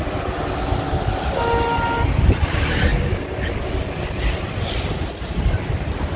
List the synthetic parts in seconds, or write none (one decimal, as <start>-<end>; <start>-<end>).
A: none